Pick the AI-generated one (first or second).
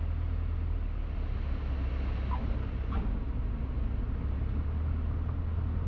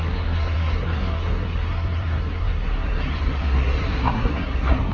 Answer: second